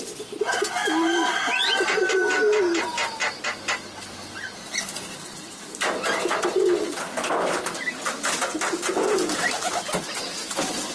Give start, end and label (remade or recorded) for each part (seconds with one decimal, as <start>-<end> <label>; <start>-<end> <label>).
0.0-10.9 recorded